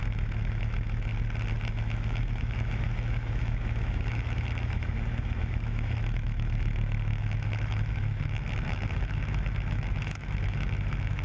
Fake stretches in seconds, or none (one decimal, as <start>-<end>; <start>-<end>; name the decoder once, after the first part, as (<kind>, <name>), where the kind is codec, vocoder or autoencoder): 0.0-1.1 (autoencoder, DAC-VAE); 1.7-11.2